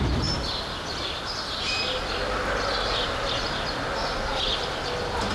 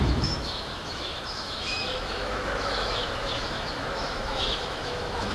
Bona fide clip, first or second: first